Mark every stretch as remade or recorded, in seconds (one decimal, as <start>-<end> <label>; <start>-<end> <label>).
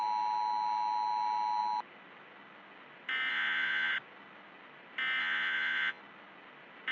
0.0-3.3 recorded; 3.3-3.9 remade; 3.9-5.2 recorded; 5.2-6.0 remade; 6.0-6.9 recorded